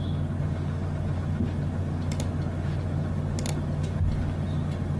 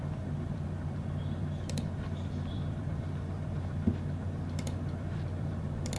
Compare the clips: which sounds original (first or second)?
first